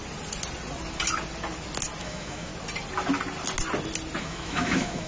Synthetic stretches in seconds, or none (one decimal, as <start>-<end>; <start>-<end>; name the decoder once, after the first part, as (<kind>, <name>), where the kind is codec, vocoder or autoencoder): 2.0-2.5 (autoencoder, DAC-VAE); 4.2-5.1